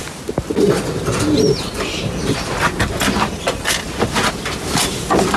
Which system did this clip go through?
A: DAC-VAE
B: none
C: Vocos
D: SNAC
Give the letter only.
B